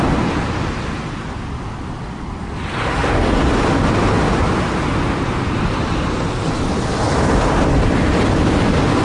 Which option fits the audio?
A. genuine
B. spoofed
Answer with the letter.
A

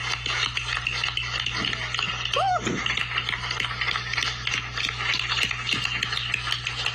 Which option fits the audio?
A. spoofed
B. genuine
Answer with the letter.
B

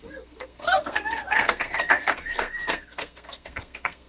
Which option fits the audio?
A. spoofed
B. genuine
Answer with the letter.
A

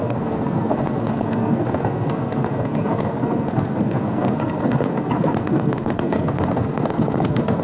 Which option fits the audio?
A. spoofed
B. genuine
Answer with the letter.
A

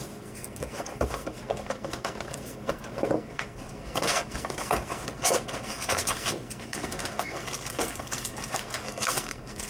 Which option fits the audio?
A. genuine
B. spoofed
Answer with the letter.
B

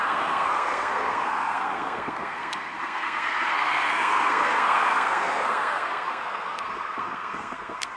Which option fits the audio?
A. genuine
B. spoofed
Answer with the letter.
B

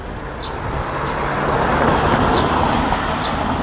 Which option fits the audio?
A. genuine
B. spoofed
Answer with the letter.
A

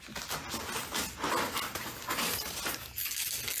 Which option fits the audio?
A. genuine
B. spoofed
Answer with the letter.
A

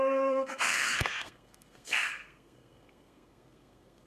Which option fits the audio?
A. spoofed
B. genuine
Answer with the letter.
A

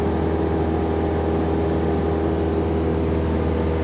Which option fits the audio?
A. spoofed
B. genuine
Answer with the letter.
B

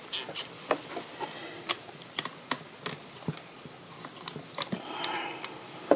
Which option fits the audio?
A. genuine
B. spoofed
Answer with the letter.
A